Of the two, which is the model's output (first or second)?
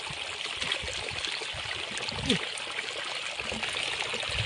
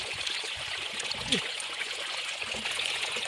second